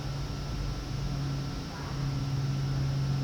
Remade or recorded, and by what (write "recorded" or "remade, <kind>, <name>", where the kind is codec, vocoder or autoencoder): recorded